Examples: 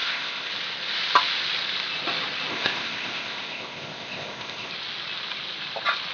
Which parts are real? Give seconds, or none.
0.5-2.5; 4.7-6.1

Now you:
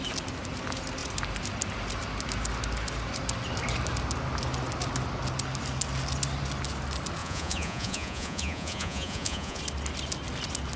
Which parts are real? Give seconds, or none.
0.0-7.2; 9.6-10.8

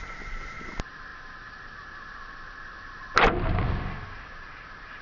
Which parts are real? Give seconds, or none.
0.7-5.0